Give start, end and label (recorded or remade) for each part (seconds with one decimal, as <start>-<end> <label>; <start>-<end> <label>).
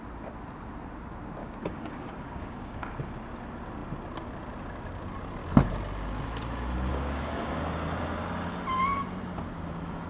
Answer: 0.0-1.4 recorded; 1.4-2.9 remade; 2.9-6.9 recorded; 6.9-7.5 remade; 7.5-10.1 recorded